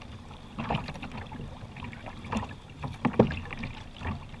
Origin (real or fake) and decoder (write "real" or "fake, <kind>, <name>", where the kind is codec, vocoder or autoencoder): real